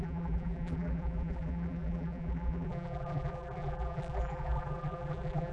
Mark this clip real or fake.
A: fake